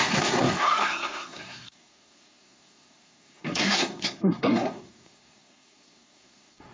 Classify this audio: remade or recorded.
remade